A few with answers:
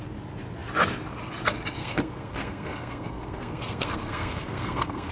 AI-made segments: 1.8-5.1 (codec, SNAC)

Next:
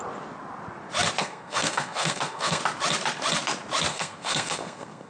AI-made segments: 1.2-2.6 (codec, SNAC); 3.9-5.1

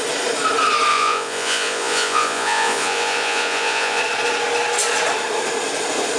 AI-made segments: 0.9-4.0 (vocoder, Vocos)

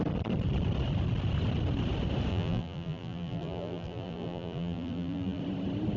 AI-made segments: 2.3-5.4 (vocoder, BigVGAN v2)